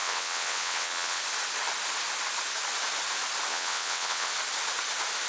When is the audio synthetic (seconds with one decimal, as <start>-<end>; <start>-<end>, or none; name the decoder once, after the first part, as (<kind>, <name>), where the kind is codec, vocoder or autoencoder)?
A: 0.0-1.2 (vocoder, WaveNeXt); 3.5-4.3